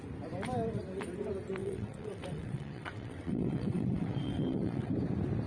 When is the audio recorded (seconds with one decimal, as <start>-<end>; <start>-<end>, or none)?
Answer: 0.0-1.6; 4.9-5.5